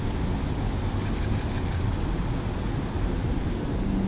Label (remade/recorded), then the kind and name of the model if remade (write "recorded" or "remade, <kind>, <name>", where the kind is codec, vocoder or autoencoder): recorded